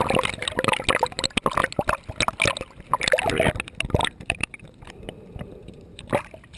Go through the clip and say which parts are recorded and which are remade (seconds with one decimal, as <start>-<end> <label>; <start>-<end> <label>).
0.0-4.0 recorded; 4.0-6.6 remade